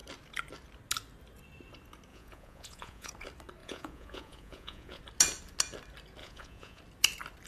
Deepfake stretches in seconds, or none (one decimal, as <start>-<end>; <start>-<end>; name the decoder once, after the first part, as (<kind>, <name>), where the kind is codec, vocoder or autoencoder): 2.1-3.1 (vocoder, Vocos); 3.6-5.0; 6.2-6.8

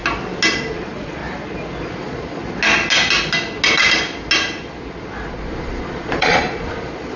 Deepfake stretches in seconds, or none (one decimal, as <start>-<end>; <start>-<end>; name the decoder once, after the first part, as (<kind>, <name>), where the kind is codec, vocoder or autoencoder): 0.6-1.2 (vocoder, Vocos); 1.9-2.4; 5.3-7.2

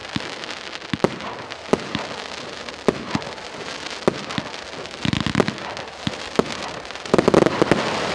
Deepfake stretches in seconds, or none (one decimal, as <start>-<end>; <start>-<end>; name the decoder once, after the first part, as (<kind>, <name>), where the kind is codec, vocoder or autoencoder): none